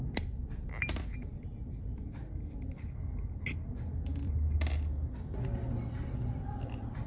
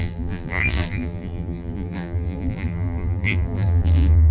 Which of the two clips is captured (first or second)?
first